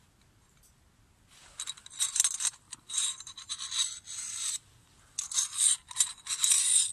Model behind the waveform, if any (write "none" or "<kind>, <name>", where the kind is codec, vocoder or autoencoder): none